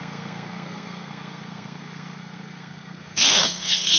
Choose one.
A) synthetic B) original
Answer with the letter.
A